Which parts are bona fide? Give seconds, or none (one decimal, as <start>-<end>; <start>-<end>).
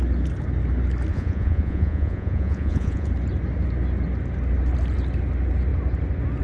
0.0-1.1; 3.1-6.4